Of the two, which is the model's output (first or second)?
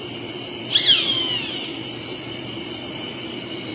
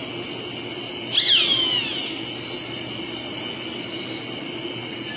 first